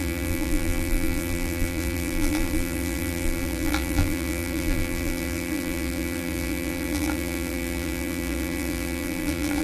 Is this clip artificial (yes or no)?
yes